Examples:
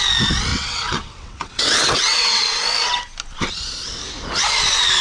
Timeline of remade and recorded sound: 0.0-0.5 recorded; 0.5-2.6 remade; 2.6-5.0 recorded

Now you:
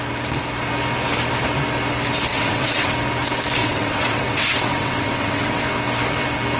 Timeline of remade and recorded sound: 0.0-2.3 recorded; 2.3-2.9 remade; 2.9-3.6 recorded; 3.6-5.6 remade; 5.6-6.6 recorded

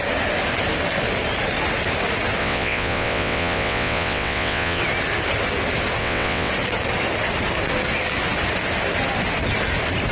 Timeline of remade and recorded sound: 0.0-2.4 recorded; 2.4-4.8 remade; 4.8-6.0 recorded; 6.0-6.5 remade; 6.5-10.1 recorded

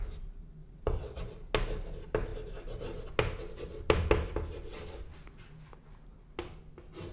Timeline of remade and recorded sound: 0.0-0.6 recorded; 0.6-1.2 remade; 1.2-7.1 recorded

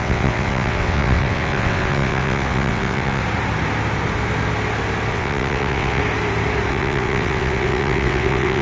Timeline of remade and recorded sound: 0.0-3.2 remade; 3.2-5.1 recorded; 5.1-6.0 remade; 6.0-6.7 recorded; 6.7-8.6 remade

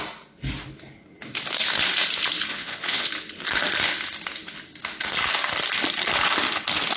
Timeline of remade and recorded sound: 0.0-2.5 recorded; 2.5-3.1 remade; 3.1-7.0 recorded

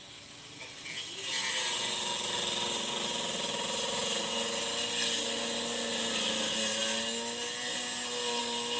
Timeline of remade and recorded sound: 0.0-8.8 recorded

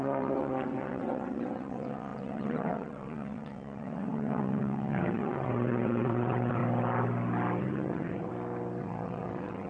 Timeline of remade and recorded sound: 0.0-6.6 remade; 6.6-7.6 recorded; 7.6-8.3 remade; 8.3-8.8 recorded; 8.8-9.7 remade